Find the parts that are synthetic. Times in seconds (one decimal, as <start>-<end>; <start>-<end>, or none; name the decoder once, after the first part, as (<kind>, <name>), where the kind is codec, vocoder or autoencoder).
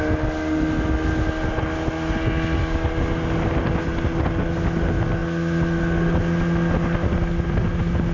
none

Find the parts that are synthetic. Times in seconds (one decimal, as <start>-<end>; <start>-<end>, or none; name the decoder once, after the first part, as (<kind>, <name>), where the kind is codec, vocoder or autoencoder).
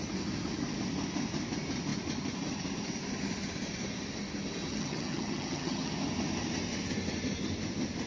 4.7-5.9 (vocoder, HiFi-GAN)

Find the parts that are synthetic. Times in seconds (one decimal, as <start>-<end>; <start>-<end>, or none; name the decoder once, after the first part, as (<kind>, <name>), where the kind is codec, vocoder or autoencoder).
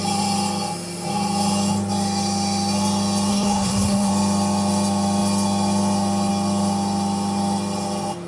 3.3-4.1 (codec, SNAC)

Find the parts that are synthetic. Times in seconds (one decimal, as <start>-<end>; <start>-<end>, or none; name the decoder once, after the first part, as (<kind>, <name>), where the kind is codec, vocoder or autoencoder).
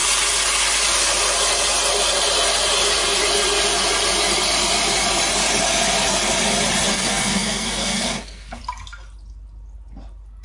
6.9-8.6 (codec, SNAC)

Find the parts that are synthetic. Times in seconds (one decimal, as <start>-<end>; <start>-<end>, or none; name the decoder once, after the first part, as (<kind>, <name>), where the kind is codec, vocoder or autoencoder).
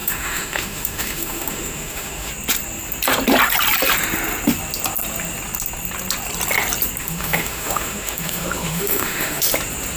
0.0-2.3 (autoencoder, DAC-VAE); 7.0-9.5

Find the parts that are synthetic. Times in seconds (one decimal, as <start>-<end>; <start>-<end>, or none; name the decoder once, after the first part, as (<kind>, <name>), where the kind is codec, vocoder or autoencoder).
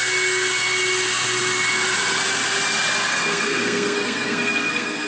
3.1-5.1 (codec, SNAC)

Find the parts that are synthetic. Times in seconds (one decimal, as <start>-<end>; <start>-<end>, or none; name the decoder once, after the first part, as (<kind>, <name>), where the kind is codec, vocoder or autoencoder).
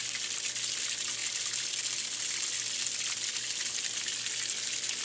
none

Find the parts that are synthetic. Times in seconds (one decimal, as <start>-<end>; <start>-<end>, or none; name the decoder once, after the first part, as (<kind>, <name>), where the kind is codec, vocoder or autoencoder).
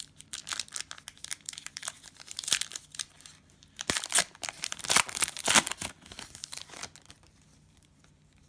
0.0-0.4 (vocoder, BigVGAN v2); 1.2-6.8; 7.6-8.5